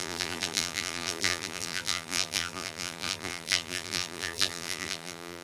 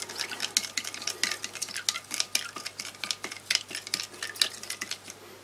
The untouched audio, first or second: second